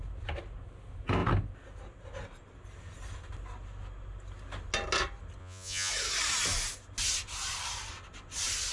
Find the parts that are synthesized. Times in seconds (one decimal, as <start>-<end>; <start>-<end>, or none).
5.4-5.9